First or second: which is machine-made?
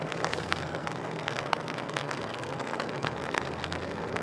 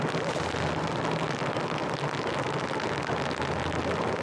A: first